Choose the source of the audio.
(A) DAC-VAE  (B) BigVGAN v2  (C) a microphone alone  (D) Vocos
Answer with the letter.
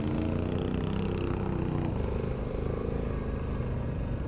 C